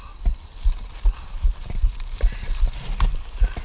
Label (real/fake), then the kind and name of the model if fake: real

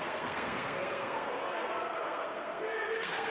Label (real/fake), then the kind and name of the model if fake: fake, codec, SNAC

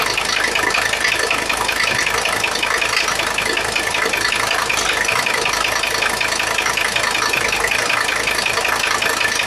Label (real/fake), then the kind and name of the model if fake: real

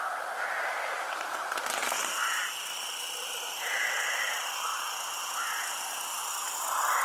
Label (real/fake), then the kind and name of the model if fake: real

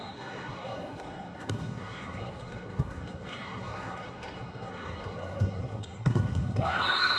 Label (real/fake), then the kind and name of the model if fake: fake, codec, SNAC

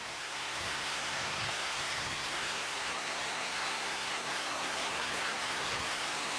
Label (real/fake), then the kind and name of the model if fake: fake, codec, SNAC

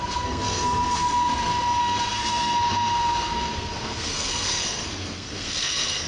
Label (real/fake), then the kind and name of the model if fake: fake, codec, SNAC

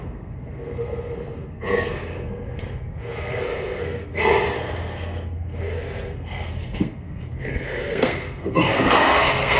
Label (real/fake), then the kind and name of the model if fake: fake, codec, SNAC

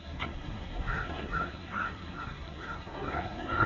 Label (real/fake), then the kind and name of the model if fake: fake, codec, SNAC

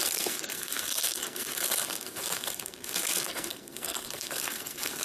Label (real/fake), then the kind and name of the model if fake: fake, codec, SNAC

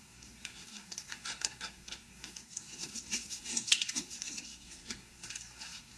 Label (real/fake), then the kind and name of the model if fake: fake, codec, SNAC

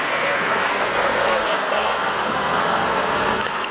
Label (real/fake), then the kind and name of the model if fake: fake, codec, SNAC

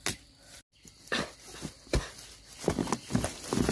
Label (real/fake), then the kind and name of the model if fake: real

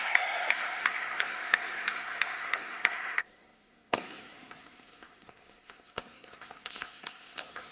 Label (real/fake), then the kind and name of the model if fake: fake, codec, SNAC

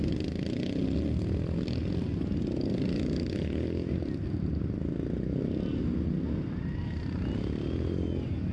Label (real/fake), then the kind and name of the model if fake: real